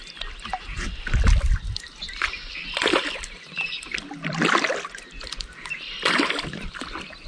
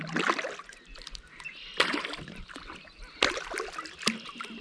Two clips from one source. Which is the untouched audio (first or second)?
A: second